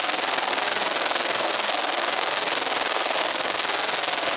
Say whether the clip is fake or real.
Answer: fake